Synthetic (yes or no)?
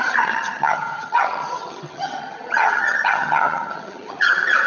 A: yes